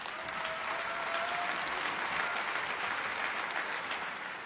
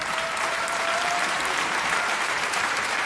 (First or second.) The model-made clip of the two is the second